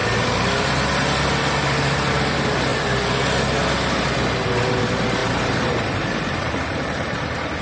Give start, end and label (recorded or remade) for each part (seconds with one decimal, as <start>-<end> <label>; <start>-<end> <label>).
0.0-5.2 recorded; 5.2-7.6 remade